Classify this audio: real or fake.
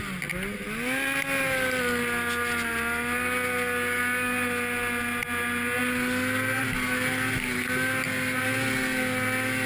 real